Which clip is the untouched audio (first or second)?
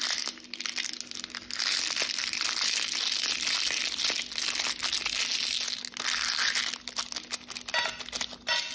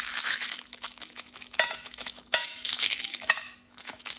first